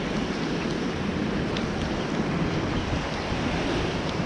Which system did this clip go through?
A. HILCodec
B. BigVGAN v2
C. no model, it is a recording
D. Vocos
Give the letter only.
C